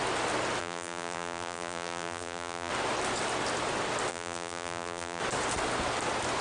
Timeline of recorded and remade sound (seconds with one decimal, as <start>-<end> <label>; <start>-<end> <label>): 0.0-0.6 recorded; 0.6-2.7 remade; 2.7-4.1 recorded; 4.1-5.2 remade; 5.2-6.4 recorded